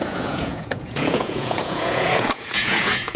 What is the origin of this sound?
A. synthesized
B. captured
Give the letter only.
A